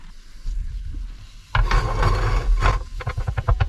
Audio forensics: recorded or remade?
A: recorded